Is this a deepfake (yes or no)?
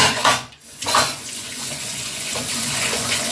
yes